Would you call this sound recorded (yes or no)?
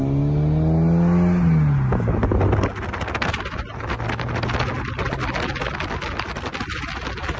yes